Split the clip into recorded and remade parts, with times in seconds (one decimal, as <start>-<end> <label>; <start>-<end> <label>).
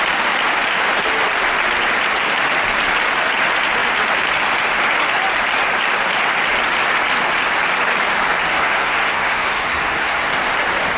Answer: 0.0-8.5 recorded; 8.5-10.3 remade; 10.3-11.0 recorded